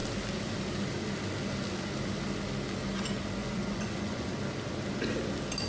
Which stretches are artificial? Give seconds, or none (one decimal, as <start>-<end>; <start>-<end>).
3.4-4.3